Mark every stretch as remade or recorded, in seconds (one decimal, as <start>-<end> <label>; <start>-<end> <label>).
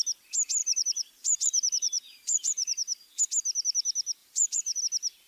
0.0-0.6 recorded; 0.6-3.2 remade; 3.2-4.2 recorded; 4.2-4.8 remade; 4.8-5.3 recorded